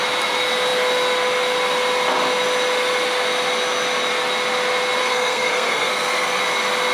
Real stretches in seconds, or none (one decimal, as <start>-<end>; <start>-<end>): 0.0-5.0; 6.4-6.9